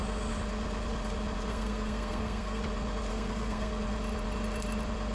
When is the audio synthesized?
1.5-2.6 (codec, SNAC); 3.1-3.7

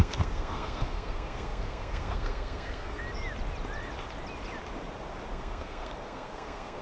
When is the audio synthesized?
0.0-3.0 (codec, SNAC); 5.3-6.8

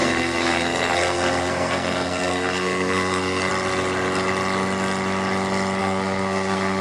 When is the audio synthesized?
0.0-3.5 (codec, SNAC); 5.8-6.8